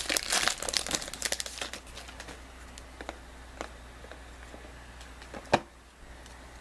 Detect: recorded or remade recorded